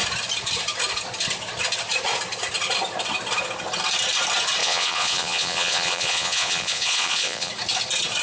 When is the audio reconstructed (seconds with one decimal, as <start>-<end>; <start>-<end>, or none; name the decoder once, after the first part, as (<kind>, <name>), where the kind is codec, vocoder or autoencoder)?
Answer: 4.6-7.5 (vocoder, Vocos)